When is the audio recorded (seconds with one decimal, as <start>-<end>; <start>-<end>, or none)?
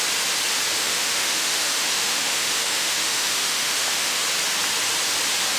0.0-0.8; 4.2-5.6